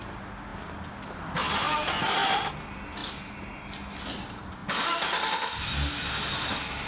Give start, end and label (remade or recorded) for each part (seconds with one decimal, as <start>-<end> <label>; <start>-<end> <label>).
0.0-6.9 recorded